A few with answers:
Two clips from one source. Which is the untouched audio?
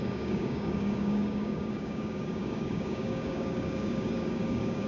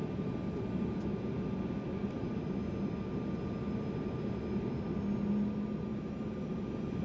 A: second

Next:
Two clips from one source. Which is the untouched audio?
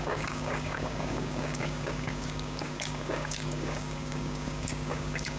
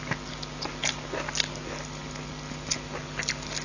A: second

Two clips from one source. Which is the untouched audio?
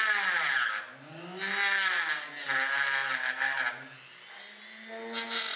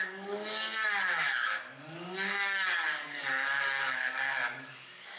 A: first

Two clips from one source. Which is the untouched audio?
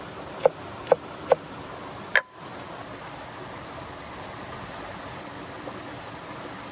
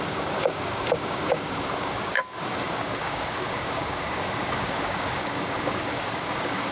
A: first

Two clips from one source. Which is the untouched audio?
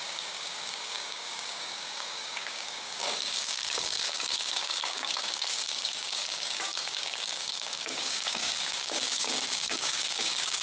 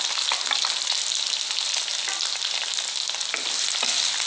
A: second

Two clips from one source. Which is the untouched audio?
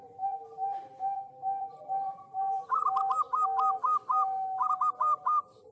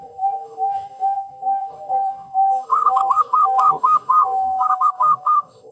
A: first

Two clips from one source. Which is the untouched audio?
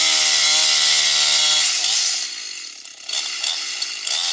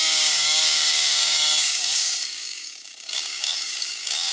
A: first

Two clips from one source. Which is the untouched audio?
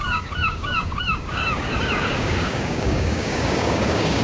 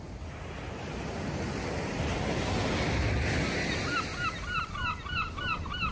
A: second